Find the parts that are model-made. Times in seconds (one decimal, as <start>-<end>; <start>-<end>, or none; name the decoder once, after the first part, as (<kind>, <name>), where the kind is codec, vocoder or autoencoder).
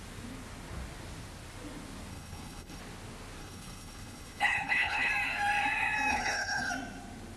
2.1-2.8 (codec, HILCodec); 3.4-5.1; 6.1-6.7